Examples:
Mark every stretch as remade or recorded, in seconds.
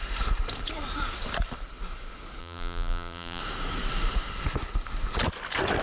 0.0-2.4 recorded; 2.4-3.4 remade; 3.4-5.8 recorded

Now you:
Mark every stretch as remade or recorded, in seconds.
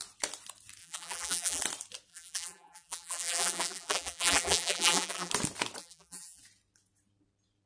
0.0-0.8 recorded; 0.8-1.6 remade; 1.6-2.1 recorded; 2.1-5.3 remade; 5.3-5.8 recorded; 5.8-6.4 remade; 6.4-7.7 recorded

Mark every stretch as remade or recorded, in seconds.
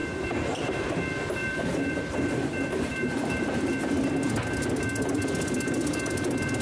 0.0-0.8 remade; 0.8-1.4 recorded; 1.4-3.8 remade; 3.8-6.6 recorded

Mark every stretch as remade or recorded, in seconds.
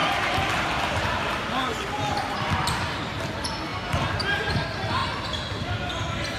0.0-0.8 remade; 0.8-3.7 recorded; 3.7-4.5 remade; 4.5-6.4 recorded